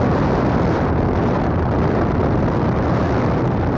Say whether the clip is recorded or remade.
recorded